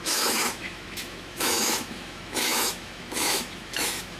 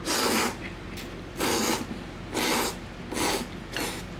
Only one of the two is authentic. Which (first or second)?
second